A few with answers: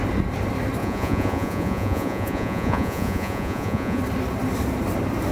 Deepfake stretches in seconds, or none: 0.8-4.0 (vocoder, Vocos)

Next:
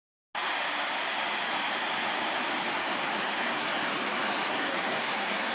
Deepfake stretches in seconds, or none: 3.3-3.7 (codec, SNAC); 4.5-5.5

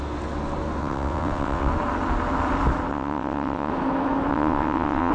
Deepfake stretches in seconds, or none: 0.8-1.7 (vocoder, WaveNeXt); 2.9-3.7; 4.3-5.1

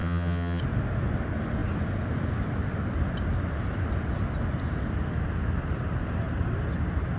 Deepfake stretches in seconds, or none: 0.0-0.6 (vocoder, HiFi-GAN)

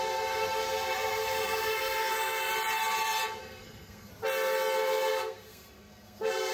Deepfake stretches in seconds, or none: 0.4-2.5 (codec, SNAC); 3.4-4.1; 5.1-6.5

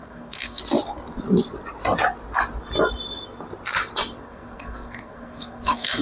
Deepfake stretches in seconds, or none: 0.0-0.6 (codec, SNAC); 4.2-6.0